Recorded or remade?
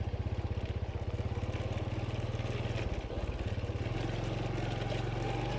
recorded